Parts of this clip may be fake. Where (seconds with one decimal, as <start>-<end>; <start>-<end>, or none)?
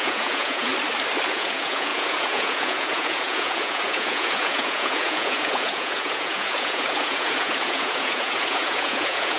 0.0-0.7; 1.3-9.4